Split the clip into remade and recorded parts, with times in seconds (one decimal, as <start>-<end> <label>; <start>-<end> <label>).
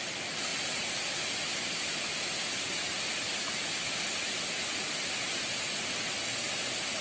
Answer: 0.0-7.0 recorded